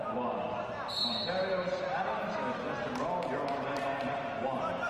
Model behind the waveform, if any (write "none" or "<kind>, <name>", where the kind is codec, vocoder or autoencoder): none